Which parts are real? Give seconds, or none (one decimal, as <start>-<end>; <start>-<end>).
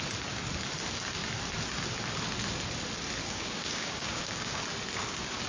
0.0-3.2; 4.6-5.5